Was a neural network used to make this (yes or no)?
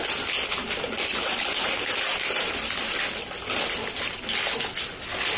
no